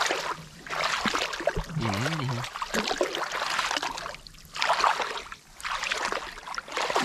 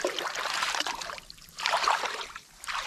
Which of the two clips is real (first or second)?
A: first